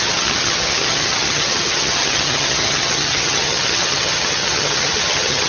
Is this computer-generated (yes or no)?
yes